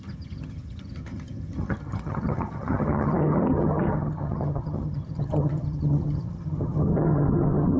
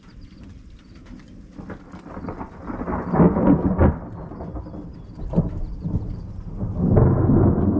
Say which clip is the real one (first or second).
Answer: second